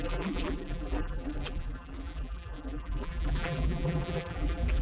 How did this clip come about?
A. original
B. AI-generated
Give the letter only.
B